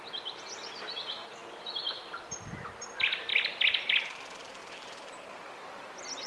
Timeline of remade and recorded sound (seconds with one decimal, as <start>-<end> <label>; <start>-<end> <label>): 0.0-3.3 remade; 3.3-4.0 recorded; 4.0-6.3 remade